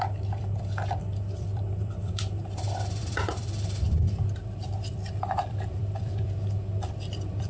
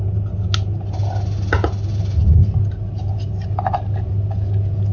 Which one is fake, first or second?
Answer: first